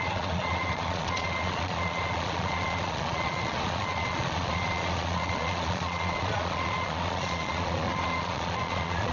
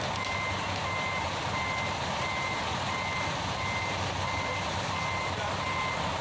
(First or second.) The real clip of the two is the second